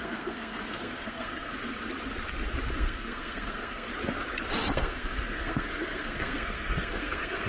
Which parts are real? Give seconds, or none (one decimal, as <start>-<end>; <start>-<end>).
1.5-2.7; 3.9-4.7